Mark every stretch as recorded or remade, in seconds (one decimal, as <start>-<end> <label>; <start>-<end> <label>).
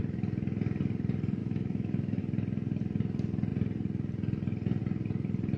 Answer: 0.0-1.4 recorded; 1.4-2.2 remade; 2.2-5.6 recorded